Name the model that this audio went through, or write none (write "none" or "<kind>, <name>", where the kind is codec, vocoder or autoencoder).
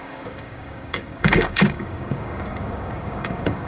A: codec, DAC